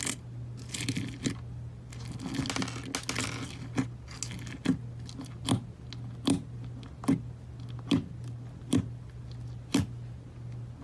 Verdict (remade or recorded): recorded